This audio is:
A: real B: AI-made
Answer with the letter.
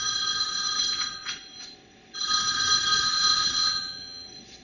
B